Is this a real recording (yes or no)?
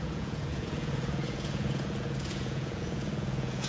no